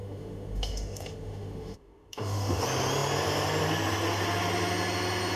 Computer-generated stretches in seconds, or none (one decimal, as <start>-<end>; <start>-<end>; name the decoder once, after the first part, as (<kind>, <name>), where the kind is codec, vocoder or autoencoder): 0.0-2.6 (autoencoder, DAC-VAE)

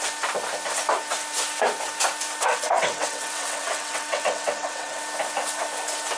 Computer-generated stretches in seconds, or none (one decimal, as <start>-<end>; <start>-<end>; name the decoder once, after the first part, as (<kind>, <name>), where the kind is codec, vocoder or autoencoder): 2.5-5.0 (vocoder, WaveNeXt)

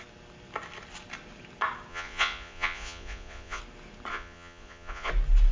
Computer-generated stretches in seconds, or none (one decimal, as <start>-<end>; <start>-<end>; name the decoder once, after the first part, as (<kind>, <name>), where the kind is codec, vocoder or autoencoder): 1.9-3.6 (vocoder, Vocos); 4.1-5.1

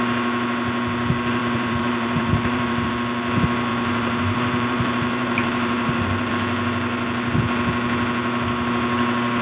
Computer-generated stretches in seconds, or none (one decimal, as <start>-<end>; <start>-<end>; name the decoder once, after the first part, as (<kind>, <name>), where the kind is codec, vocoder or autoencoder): 1.4-2.9 (vocoder, BigVGAN v2); 3.7-6.3

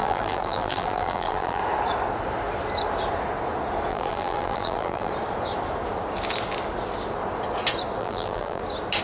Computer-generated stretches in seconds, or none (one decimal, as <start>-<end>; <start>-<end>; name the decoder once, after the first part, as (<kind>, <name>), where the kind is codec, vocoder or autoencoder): 0.0-1.6 (vocoder, BigVGAN v2); 3.9-5.1; 8.0-8.6

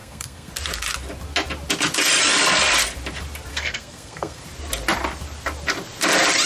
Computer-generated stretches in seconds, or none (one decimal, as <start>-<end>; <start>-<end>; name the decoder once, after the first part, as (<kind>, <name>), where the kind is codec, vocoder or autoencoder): 0.0-0.5 (codec, SNAC); 3.5-4.4